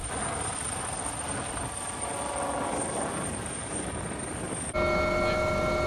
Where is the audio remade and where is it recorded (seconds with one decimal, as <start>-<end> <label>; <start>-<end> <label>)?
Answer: 0.0-5.9 recorded